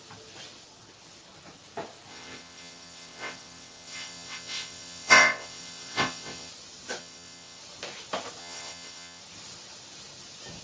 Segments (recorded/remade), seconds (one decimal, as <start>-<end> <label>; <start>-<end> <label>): 0.0-2.1 recorded; 2.1-6.5 remade; 6.5-7.0 recorded; 7.0-7.6 remade; 7.6-8.4 recorded; 8.4-9.2 remade; 9.2-10.6 recorded